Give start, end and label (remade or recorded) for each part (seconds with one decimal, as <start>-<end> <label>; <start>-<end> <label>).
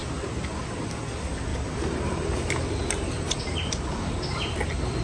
0.0-1.5 recorded; 1.5-4.1 remade; 4.1-5.0 recorded